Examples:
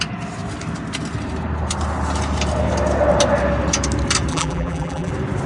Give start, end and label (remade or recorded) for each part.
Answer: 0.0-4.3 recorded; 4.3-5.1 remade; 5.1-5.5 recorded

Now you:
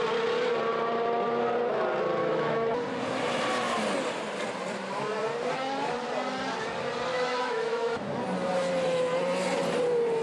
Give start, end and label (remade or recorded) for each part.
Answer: 0.0-2.2 recorded; 2.2-2.7 remade; 2.7-7.1 recorded; 7.1-8.1 remade; 8.1-10.2 recorded